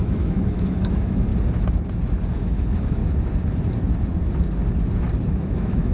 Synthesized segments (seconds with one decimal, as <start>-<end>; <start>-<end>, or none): 0.0-1.3; 2.3-3.0; 5.3-5.9